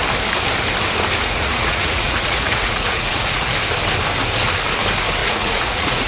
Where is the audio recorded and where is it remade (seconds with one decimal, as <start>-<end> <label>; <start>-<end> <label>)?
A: 0.0-1.2 recorded; 1.2-3.5 remade; 3.5-5.2 recorded; 5.2-6.1 remade